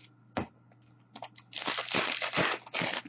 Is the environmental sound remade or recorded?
recorded